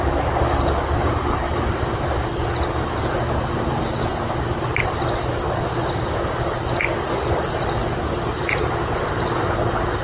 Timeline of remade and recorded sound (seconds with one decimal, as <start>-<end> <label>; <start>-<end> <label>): 0.0-10.0 recorded